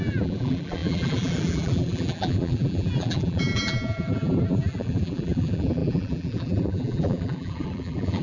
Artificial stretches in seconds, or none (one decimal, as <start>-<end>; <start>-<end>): 0.0-8.2